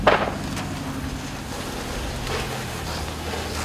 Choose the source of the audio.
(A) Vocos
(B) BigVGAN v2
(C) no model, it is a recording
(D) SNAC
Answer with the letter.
C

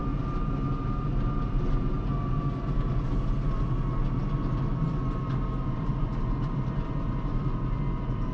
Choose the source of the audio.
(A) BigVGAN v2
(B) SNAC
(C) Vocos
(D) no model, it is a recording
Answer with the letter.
D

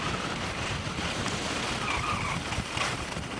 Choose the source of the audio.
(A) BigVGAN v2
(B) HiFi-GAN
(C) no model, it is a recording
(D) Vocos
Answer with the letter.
A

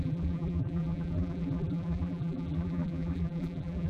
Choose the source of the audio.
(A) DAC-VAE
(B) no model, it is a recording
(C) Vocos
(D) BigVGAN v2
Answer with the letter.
D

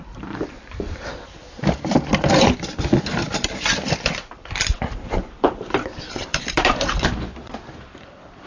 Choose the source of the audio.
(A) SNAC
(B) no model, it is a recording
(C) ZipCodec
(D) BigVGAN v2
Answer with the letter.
D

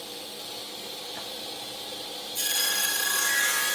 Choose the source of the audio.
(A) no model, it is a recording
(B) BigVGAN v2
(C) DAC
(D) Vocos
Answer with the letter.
B